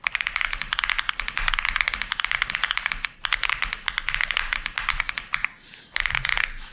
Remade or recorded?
recorded